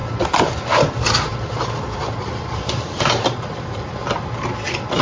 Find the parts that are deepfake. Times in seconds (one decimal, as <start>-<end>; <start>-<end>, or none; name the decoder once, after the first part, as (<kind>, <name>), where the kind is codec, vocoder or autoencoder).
0.0-0.6 (vocoder, BigVGAN v2); 1.3-4.2